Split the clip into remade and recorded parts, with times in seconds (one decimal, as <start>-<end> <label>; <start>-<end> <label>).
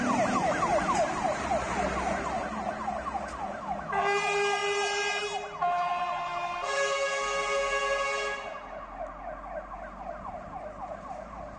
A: 0.0-11.6 recorded